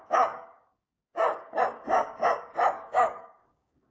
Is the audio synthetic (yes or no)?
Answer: yes